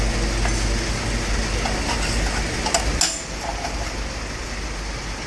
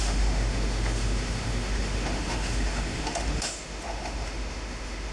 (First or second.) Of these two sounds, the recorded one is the first